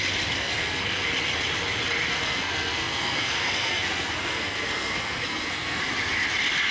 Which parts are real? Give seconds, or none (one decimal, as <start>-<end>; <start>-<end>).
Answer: 0.0-0.4; 1.1-2.1; 5.8-6.7

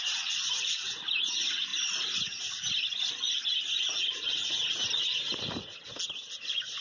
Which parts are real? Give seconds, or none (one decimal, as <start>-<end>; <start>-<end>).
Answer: 0.0-6.8

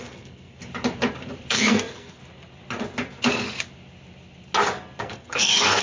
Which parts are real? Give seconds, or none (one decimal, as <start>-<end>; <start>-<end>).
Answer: 0.6-1.5; 2.2-5.0